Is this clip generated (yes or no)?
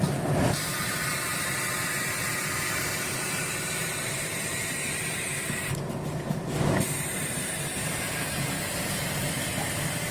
no